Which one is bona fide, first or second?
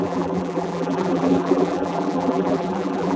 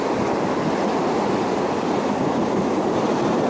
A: second